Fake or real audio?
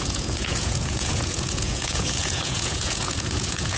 fake